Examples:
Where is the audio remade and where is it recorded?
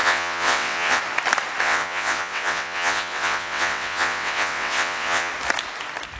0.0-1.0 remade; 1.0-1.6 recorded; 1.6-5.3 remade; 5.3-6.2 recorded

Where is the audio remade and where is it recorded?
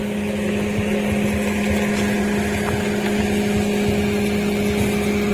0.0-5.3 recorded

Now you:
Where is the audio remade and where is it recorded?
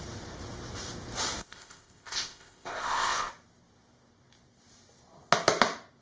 0.0-1.4 recorded; 1.4-3.3 remade; 3.3-6.0 recorded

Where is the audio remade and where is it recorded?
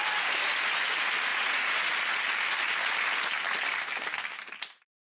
0.0-1.3 recorded; 1.3-1.9 remade; 1.9-5.2 recorded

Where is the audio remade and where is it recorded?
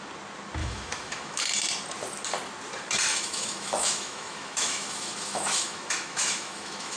0.0-0.6 recorded; 0.6-1.4 remade; 1.4-3.1 recorded; 3.1-7.0 remade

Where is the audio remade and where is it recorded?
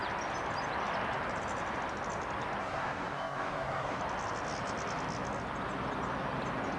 0.0-2.6 recorded; 2.6-4.0 remade; 4.0-6.8 recorded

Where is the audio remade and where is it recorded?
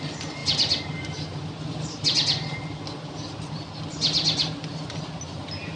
0.0-5.8 recorded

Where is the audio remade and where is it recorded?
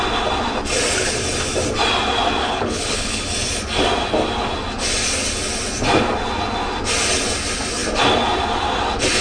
0.0-2.4 recorded; 2.4-3.2 remade; 3.2-9.2 recorded